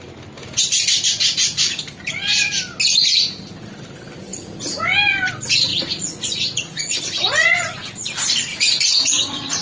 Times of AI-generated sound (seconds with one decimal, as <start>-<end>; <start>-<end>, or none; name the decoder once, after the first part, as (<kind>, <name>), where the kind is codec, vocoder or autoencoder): 5.7-7.9 (vocoder, Vocos); 8.5-9.6